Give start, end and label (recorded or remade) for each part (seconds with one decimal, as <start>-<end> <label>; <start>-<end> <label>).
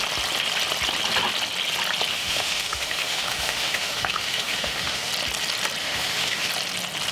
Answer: 0.0-2.1 recorded; 2.1-5.1 remade; 5.1-5.8 recorded; 5.8-6.5 remade; 6.5-7.1 recorded